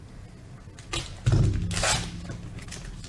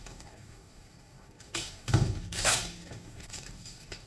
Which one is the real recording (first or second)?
first